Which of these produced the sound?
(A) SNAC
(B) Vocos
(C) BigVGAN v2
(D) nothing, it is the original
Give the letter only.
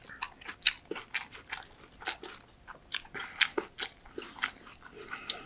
D